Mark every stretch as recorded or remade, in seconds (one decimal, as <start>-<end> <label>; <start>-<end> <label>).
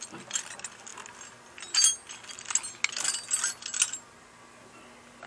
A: 0.0-5.3 recorded